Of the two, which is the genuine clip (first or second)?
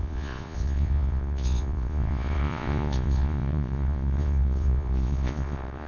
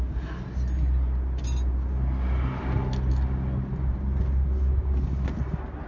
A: second